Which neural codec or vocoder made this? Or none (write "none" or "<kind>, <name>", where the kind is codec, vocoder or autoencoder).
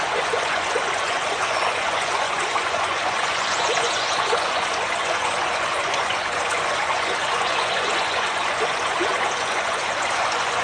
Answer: vocoder, Vocos